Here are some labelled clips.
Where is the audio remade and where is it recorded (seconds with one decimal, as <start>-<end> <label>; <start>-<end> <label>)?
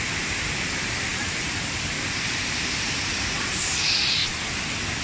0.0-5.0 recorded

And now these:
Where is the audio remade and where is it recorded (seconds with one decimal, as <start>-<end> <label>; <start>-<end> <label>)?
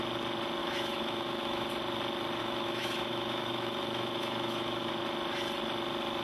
0.0-0.6 recorded; 0.6-1.7 remade; 1.7-2.4 recorded; 2.4-4.9 remade; 4.9-6.2 recorded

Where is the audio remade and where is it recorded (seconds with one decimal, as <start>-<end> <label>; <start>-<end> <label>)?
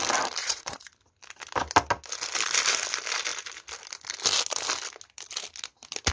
0.0-0.4 recorded; 0.4-0.9 remade; 0.9-6.1 recorded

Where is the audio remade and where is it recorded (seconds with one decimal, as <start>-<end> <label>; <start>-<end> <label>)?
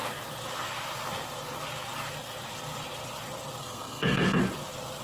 0.0-3.6 recorded; 3.6-4.4 remade; 4.4-5.0 recorded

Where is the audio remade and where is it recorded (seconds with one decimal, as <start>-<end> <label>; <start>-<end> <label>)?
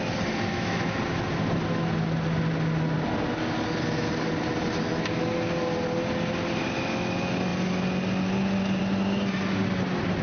0.0-0.5 recorded; 0.5-1.0 remade; 1.0-10.2 recorded